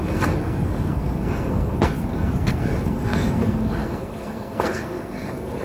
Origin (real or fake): fake